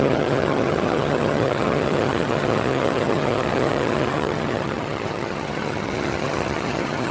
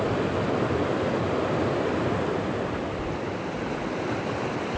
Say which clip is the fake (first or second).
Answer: first